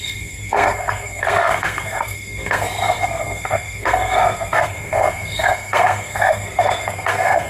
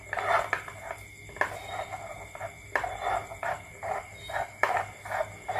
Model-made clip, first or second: first